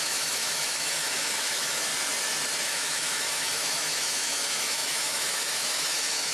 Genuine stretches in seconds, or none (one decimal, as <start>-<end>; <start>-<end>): 1.9-2.6